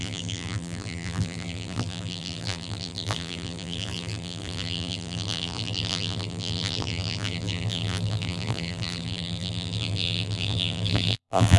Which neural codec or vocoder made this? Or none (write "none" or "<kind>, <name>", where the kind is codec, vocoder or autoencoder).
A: vocoder, BigVGAN v2